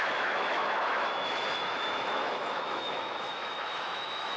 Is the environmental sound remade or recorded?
remade